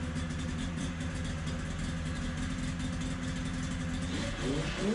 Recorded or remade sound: recorded